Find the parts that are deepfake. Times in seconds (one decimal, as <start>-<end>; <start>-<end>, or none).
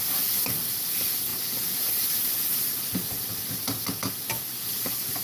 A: none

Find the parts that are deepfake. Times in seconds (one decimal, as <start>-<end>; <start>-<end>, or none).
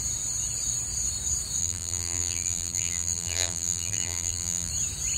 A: 1.6-4.7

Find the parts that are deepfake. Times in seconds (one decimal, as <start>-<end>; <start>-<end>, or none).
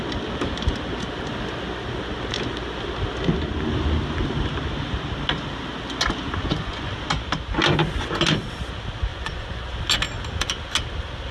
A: 6.4-6.9; 9.1-9.7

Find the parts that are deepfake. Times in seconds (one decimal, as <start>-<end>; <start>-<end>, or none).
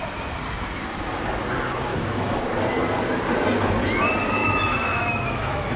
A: 1.9-2.4; 4.4-5.8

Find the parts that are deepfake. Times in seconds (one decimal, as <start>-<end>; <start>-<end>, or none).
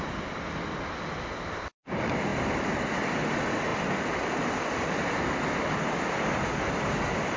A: 2.3-3.1; 3.7-7.0